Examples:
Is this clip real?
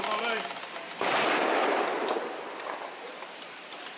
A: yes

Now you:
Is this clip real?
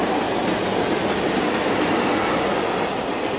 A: yes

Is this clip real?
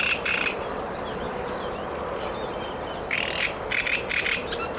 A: yes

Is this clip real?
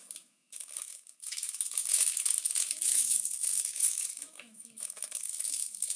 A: no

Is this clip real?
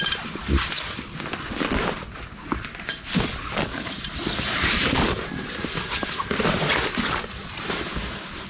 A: yes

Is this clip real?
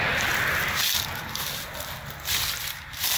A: yes